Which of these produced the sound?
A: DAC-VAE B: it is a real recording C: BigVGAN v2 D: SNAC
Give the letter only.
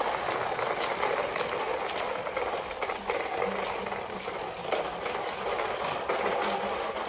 B